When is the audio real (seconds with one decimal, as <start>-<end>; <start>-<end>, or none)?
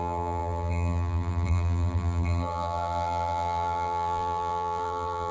none